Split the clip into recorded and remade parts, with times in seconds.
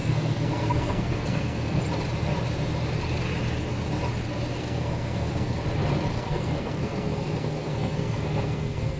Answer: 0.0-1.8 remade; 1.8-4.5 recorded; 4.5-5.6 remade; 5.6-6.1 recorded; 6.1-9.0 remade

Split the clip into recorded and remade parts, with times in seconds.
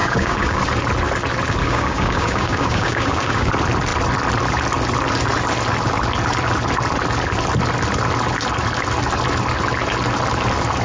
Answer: 0.0-0.6 remade; 0.6-1.6 recorded; 1.6-3.5 remade; 3.5-10.8 recorded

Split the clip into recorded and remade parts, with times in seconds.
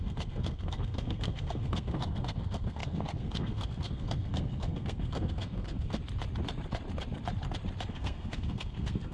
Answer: 0.0-6.0 remade; 6.0-7.9 recorded; 7.9-9.1 remade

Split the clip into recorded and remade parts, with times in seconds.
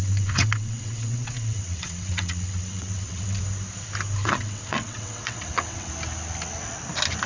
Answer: 0.0-3.4 remade; 3.4-4.2 recorded; 4.2-5.9 remade; 5.9-7.3 recorded